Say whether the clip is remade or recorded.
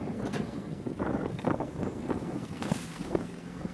remade